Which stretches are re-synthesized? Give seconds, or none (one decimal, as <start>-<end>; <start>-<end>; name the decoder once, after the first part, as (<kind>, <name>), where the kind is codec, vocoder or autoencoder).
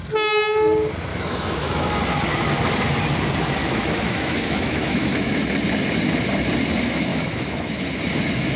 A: 1.1-2.0 (autoencoder, DAC-VAE); 3.6-5.4; 7.1-7.8